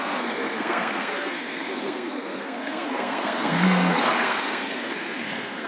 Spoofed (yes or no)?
yes